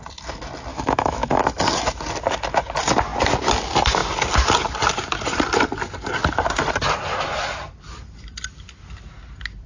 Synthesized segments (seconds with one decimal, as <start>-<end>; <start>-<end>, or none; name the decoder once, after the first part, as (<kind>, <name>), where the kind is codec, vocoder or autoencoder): 0.7-1.4 (autoencoder, DAC-VAE)